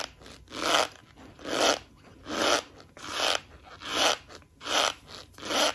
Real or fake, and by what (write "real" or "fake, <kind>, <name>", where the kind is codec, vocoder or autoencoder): real